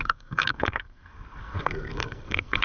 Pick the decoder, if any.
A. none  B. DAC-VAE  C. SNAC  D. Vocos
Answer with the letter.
C